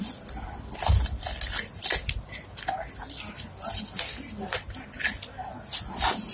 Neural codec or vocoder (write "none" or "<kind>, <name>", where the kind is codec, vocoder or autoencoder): none